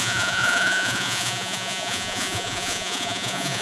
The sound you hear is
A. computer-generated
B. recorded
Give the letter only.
A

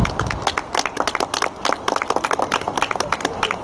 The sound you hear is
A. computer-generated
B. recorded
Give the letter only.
B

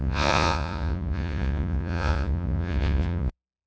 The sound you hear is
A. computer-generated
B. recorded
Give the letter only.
A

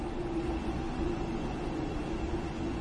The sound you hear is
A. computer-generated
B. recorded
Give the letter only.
A